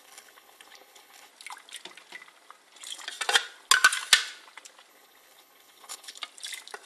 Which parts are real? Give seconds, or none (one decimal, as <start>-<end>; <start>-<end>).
1.3-4.9; 6.2-6.9

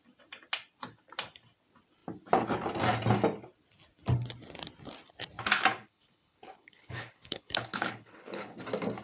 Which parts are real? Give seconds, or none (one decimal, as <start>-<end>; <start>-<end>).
0.0-5.8; 8.6-9.0

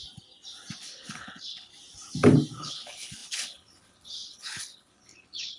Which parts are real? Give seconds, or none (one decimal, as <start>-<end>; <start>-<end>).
0.0-0.8; 1.7-2.6

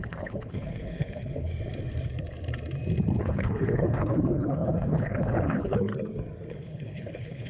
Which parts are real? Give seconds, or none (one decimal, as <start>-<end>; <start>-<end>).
1.5-3.2; 5.9-6.5

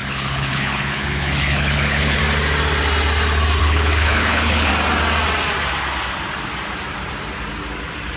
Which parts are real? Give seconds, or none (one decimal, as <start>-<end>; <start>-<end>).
2.2-3.6; 4.7-8.2